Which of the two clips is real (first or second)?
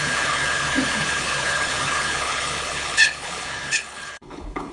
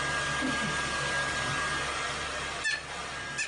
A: second